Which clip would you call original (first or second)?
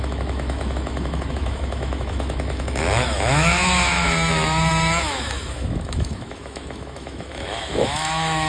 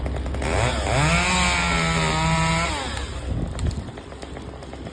second